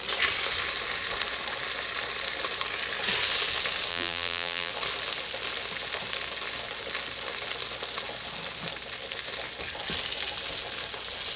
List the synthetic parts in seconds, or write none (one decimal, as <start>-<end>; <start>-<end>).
3.9-4.7